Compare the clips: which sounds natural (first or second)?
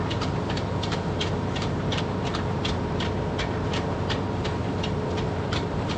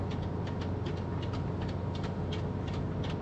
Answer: second